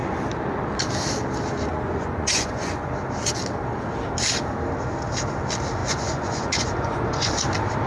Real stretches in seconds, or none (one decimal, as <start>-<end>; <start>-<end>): 0.0-1.7; 2.9-5.8; 7.3-7.9